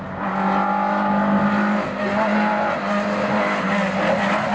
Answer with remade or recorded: recorded